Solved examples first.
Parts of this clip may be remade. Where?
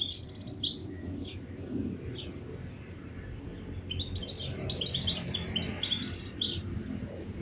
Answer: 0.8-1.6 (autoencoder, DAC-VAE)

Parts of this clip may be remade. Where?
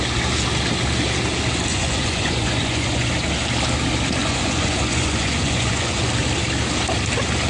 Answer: 1.7-3.1 (vocoder, Vocos); 4.2-6.1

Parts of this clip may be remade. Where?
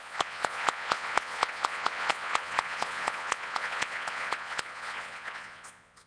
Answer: 0.0-6.1 (vocoder, Vocos)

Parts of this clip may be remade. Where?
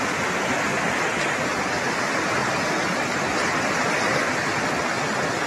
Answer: none